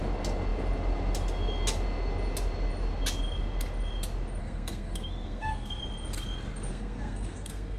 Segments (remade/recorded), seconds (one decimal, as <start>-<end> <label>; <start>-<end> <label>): 0.0-4.4 recorded; 4.4-5.8 remade; 5.8-6.7 recorded; 6.7-7.8 remade